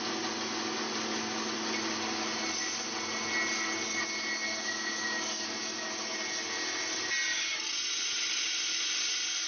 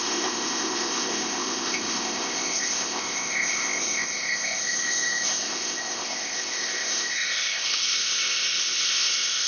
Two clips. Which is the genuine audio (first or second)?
first